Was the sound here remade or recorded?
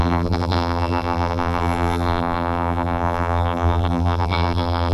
remade